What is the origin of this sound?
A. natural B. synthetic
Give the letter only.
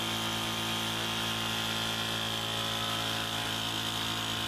A